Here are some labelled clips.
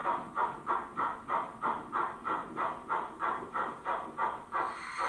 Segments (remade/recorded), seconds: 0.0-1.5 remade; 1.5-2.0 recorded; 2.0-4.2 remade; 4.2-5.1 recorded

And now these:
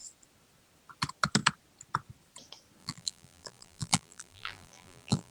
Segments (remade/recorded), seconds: 0.0-2.8 recorded; 2.8-5.3 remade

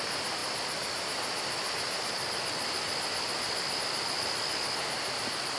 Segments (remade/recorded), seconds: 0.0-5.6 recorded

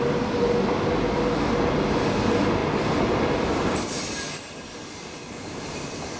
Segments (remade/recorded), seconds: 0.0-6.2 recorded

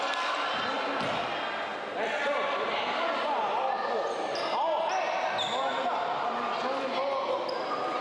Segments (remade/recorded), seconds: 0.0-5.7 recorded; 5.7-6.4 remade; 6.4-8.0 recorded

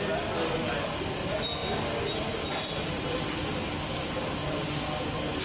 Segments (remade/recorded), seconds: 0.0-5.4 recorded

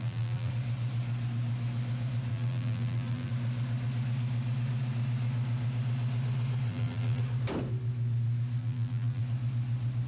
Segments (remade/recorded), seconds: 0.0-0.5 remade; 0.5-2.3 recorded; 2.3-3.3 remade; 3.3-6.7 recorded; 6.7-7.2 remade; 7.2-8.6 recorded; 8.6-9.2 remade; 9.2-10.1 recorded

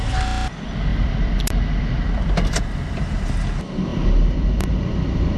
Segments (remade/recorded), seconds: 0.0-0.9 recorded; 0.9-3.3 remade; 3.3-3.9 recorded; 3.9-5.4 remade